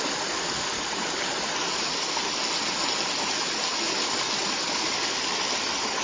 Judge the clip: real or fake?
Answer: real